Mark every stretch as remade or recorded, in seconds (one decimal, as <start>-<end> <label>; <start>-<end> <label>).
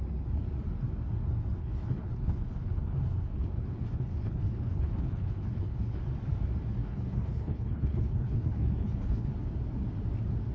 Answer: 0.0-1.6 recorded; 1.6-6.0 remade; 6.0-6.8 recorded; 6.8-9.3 remade; 9.3-10.5 recorded